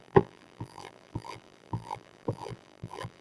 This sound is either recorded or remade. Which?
remade